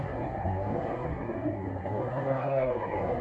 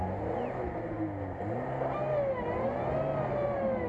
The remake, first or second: first